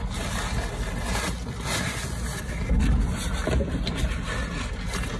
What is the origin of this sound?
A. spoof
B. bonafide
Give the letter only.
B